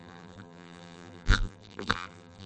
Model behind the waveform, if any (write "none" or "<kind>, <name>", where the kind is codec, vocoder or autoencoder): vocoder, BigVGAN v2